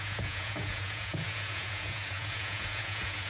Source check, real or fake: fake